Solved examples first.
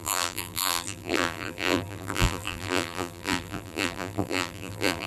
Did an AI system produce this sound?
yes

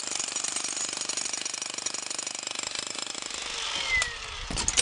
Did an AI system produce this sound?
no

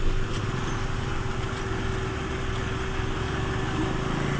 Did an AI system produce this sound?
no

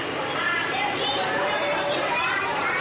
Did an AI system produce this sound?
yes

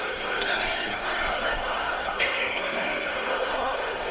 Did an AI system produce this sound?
yes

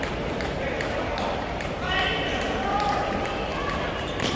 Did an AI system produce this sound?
yes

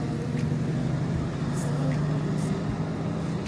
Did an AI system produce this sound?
no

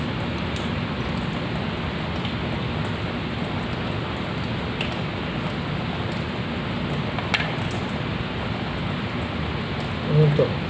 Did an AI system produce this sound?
no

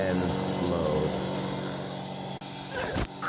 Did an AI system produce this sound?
no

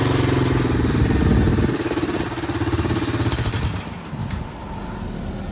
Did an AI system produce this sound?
no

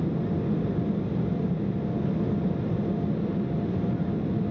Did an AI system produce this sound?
no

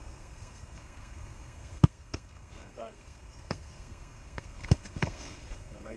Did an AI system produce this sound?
yes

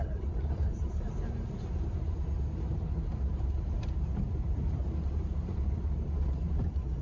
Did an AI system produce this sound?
yes